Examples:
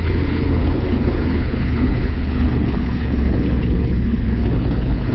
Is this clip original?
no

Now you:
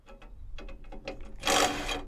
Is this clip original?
yes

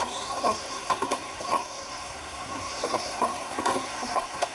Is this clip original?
no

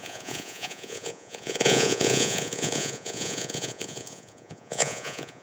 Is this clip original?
no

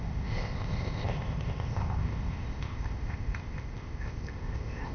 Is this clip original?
no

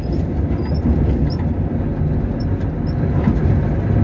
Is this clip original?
yes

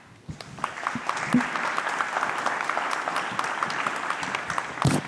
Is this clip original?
yes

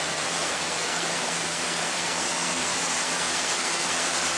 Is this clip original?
no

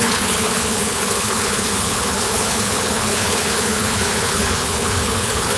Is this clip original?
no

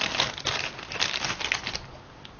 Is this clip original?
yes